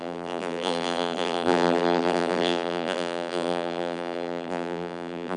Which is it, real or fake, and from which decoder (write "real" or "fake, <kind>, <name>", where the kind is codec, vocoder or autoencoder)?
fake, vocoder, BigVGAN v2